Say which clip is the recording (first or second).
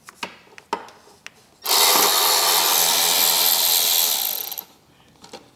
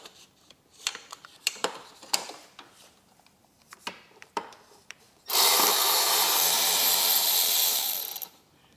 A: first